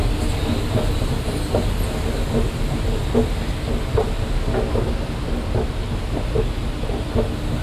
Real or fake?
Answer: real